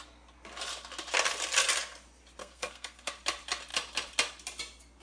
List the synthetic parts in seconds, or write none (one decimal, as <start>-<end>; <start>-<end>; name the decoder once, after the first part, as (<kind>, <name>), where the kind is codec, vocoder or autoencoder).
2.4-3.1 (codec, SNAC)